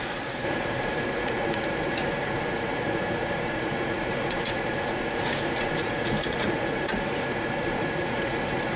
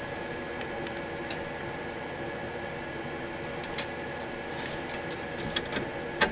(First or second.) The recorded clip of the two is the second